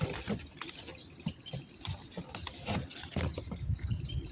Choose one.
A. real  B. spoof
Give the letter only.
A